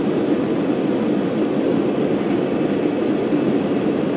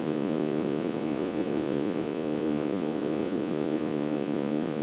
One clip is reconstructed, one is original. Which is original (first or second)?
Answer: first